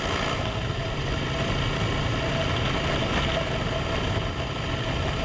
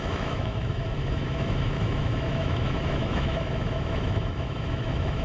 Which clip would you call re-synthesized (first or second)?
second